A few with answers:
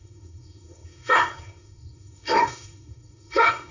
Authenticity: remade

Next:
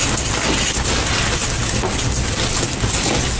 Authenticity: recorded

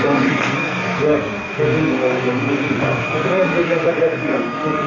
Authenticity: remade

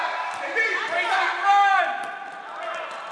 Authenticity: recorded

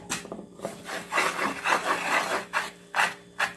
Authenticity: recorded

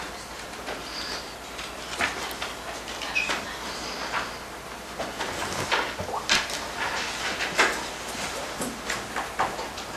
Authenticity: recorded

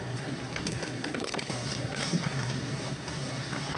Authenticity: remade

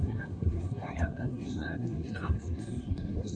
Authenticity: remade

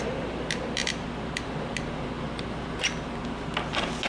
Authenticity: recorded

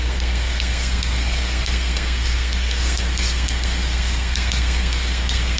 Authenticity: remade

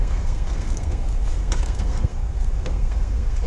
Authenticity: remade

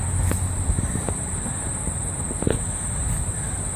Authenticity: recorded